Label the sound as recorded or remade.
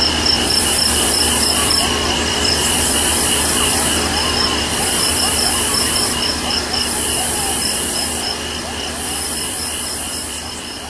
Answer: remade